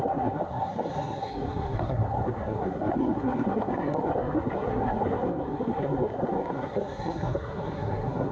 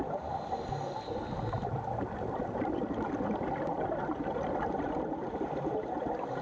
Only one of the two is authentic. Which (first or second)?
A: second